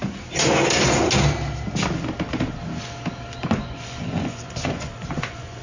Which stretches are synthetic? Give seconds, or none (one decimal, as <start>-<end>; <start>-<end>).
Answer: 3.4-5.6

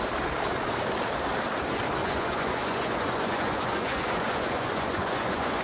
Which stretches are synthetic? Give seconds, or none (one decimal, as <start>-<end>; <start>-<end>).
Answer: 2.0-5.6

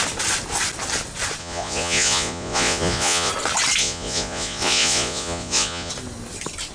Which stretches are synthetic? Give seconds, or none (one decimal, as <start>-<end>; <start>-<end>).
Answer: 1.4-3.3; 3.8-5.9

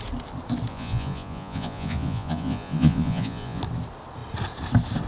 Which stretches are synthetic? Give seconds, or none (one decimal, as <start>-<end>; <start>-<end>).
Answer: 0.7-3.6

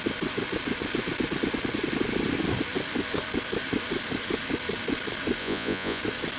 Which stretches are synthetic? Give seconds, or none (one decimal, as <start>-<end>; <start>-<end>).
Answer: 5.4-6.0